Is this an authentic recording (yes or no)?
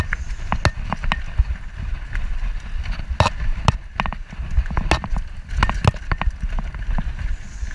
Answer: yes